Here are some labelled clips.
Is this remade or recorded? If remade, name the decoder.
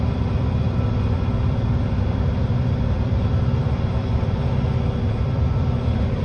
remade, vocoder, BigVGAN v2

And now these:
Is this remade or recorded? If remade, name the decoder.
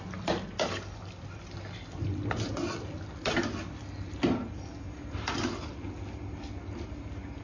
recorded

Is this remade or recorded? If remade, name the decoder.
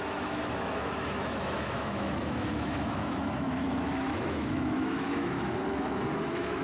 remade, autoencoder, DAC-VAE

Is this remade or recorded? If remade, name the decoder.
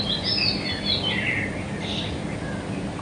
recorded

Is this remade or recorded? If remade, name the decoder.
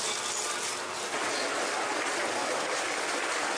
recorded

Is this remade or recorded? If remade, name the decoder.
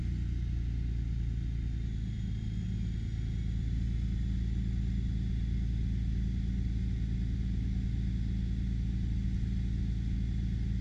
recorded